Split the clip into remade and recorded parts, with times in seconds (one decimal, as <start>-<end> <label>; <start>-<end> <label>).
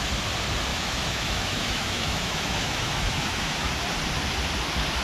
0.0-0.7 recorded; 0.7-3.7 remade; 3.7-5.0 recorded